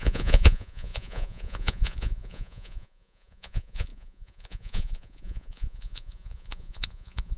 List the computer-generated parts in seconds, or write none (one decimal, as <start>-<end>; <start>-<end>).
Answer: 0.0-7.4